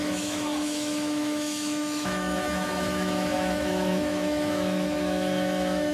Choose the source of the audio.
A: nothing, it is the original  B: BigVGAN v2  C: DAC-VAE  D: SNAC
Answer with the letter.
C